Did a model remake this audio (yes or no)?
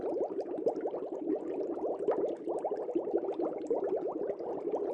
no